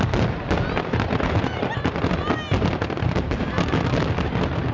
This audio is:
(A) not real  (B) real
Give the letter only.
B